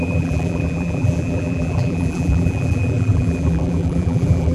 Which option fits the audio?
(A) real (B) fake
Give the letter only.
B